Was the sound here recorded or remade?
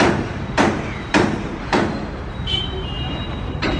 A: remade